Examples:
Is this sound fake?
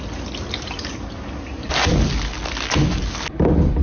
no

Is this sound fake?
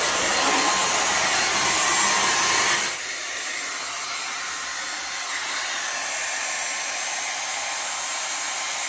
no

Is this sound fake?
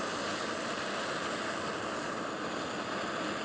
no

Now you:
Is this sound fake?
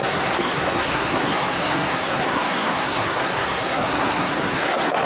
yes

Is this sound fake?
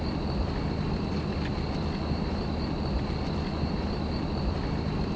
no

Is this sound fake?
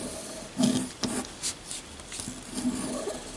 no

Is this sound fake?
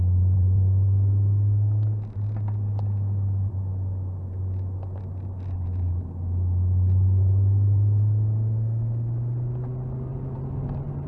no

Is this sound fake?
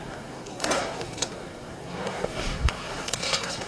yes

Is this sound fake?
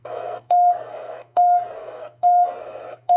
yes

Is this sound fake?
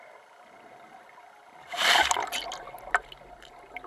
no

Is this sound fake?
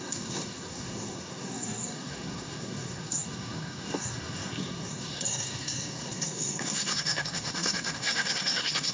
yes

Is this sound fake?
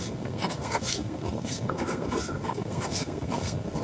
yes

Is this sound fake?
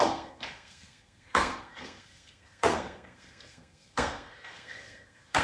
yes